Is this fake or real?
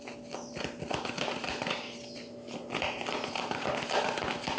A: real